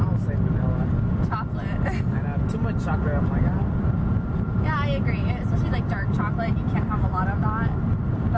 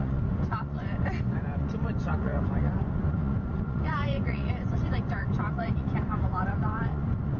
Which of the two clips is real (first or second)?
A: first